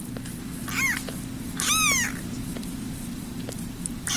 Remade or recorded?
recorded